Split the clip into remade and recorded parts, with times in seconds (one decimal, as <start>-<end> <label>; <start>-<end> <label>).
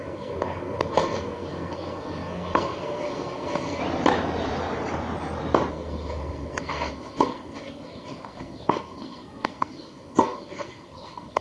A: 0.0-3.8 remade; 3.8-5.7 recorded; 5.7-11.4 remade